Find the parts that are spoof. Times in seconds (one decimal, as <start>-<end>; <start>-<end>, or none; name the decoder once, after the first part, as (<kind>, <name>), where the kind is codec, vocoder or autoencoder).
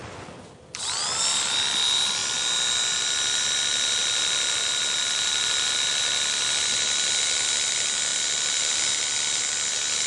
0.0-2.2 (vocoder, BigVGAN v2); 3.0-10.1